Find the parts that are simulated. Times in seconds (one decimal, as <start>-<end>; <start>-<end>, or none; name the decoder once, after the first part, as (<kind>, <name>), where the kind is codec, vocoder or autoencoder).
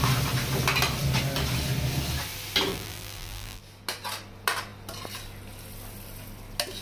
2.7-3.6 (vocoder, BigVGAN v2)